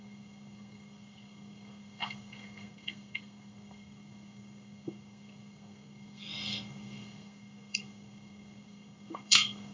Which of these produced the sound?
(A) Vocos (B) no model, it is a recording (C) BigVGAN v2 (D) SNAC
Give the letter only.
D